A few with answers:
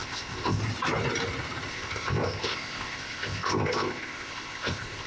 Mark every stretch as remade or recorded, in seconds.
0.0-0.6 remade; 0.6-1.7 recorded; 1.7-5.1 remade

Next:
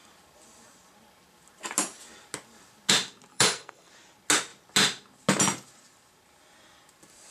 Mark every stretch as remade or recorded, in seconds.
0.0-3.3 recorded; 3.3-3.9 remade; 3.9-7.3 recorded

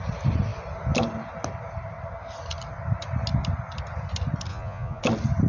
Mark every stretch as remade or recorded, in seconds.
0.0-4.5 recorded; 4.5-5.0 remade; 5.0-5.5 recorded